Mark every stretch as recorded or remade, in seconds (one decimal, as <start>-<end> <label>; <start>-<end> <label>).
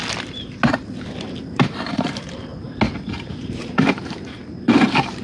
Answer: 0.0-1.2 recorded; 1.2-2.5 remade; 2.5-3.4 recorded; 3.4-5.2 remade